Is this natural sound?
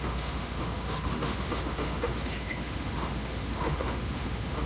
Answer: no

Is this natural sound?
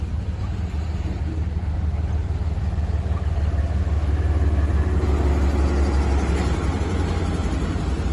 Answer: yes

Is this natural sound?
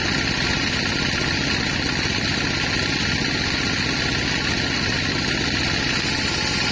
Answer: yes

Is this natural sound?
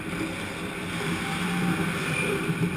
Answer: yes